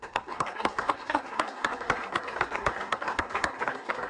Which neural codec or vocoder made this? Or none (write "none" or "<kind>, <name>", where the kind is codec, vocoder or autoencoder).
codec, SNAC